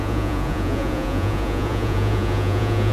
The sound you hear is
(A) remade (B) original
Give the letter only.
A